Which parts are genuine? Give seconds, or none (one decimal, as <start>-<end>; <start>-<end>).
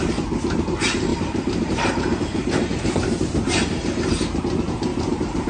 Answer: 0.0-1.1; 4.4-4.9